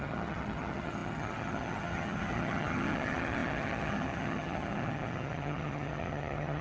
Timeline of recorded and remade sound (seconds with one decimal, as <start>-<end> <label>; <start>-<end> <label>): 0.0-6.6 remade